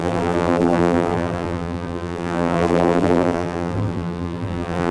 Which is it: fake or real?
fake